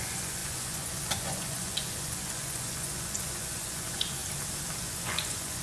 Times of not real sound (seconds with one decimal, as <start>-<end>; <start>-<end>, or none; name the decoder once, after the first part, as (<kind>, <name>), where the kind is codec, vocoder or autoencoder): 0.0-4.2 (vocoder, Vocos); 4.8-5.6